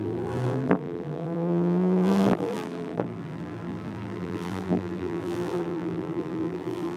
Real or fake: fake